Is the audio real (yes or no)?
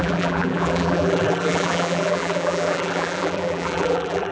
no